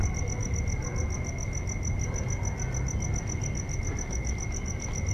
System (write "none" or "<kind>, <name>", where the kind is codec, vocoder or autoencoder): none